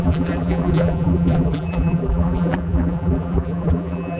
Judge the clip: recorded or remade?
remade